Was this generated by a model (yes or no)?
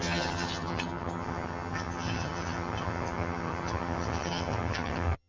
yes